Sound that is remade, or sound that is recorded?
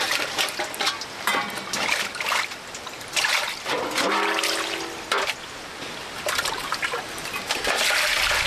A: recorded